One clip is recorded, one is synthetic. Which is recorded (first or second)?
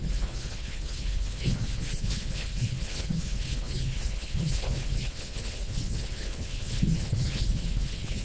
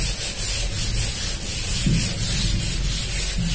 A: second